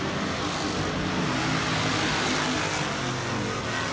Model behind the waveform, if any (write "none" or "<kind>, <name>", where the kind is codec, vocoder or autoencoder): none